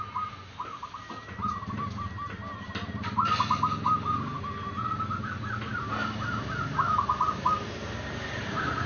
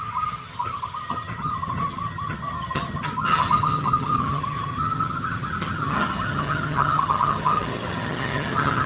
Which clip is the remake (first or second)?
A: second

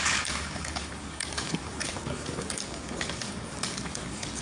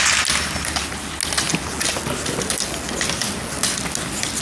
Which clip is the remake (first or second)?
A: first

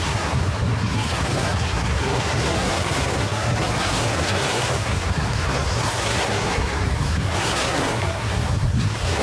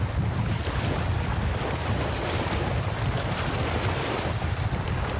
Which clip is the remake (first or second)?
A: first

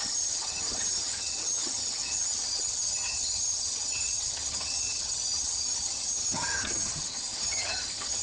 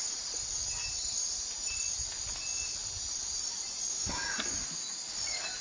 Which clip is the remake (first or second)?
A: first